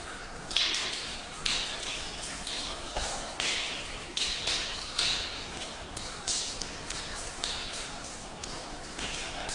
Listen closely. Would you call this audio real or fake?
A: fake